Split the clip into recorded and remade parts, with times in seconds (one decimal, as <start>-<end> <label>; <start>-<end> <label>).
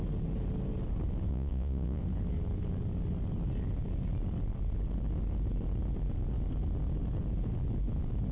0.0-1.3 recorded; 1.3-2.0 remade; 2.0-8.3 recorded